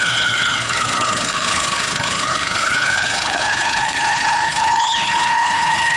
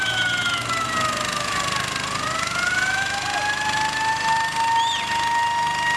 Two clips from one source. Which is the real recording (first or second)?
second